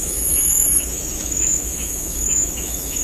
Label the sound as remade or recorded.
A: remade